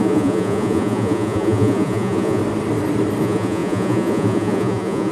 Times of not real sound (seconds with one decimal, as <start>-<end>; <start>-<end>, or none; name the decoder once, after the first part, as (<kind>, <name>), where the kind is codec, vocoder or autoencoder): 0.0-2.4 (vocoder, Vocos); 3.2-5.1